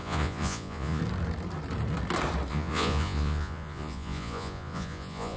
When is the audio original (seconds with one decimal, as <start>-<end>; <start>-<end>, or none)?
1.0-2.5